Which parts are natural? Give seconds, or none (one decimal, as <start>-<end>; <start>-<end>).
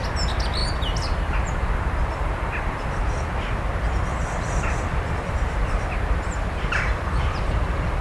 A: 0.0-0.6; 3.6-4.1; 7.5-8.0